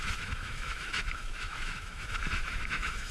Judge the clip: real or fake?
fake